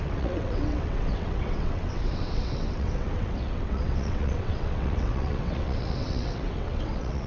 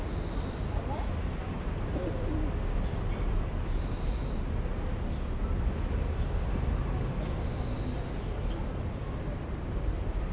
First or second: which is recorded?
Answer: second